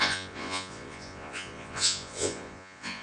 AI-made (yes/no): yes